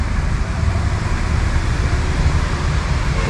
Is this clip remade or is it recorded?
remade